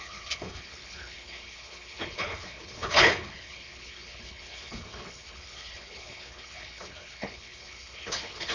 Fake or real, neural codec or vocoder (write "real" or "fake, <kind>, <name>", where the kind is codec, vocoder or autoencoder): fake, codec, HILCodec